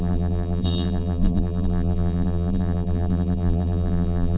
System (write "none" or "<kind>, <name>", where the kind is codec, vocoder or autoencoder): vocoder, BigVGAN v2